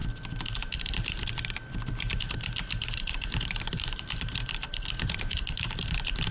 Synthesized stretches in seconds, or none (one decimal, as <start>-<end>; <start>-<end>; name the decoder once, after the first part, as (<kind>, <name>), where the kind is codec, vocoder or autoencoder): 1.3-6.3 (vocoder, BigVGAN v2)